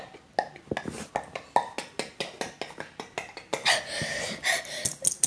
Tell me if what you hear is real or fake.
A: real